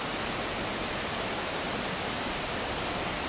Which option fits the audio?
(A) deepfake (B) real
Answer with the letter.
B